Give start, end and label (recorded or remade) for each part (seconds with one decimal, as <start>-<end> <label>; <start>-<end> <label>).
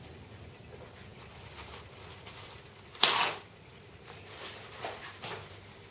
0.0-5.9 recorded